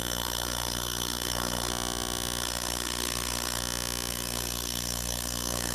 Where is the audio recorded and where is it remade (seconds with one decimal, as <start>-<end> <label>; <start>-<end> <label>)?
0.0-1.7 remade; 1.7-2.4 recorded; 2.4-3.6 remade; 3.6-4.1 recorded; 4.1-5.7 remade